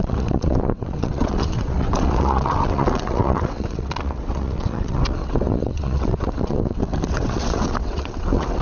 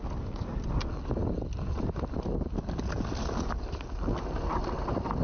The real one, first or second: second